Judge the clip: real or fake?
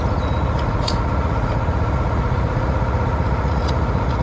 fake